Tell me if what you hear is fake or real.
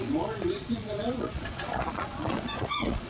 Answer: fake